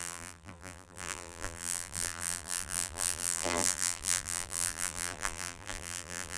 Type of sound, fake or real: fake